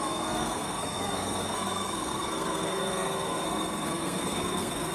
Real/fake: fake